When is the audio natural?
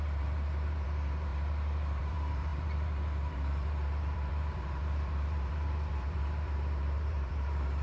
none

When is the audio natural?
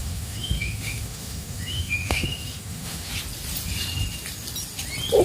3.1-5.2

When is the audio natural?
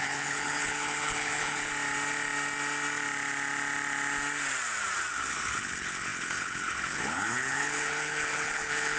1.7-5.1